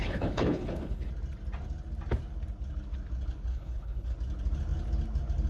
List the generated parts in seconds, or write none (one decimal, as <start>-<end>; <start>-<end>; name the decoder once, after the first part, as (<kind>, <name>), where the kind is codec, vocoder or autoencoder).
0.0-1.1 (codec, HILCodec); 3.5-4.1